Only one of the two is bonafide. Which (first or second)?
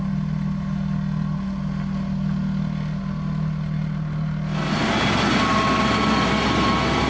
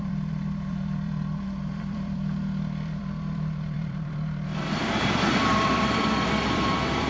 first